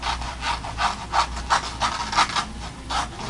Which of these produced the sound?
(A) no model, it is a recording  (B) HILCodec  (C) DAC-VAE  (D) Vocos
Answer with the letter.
A